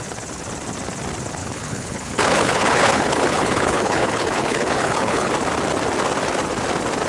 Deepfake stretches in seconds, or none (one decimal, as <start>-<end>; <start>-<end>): 1.4-5.3